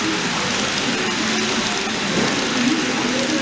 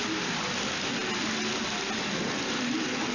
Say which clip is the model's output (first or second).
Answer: second